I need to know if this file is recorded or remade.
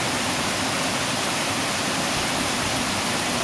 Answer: recorded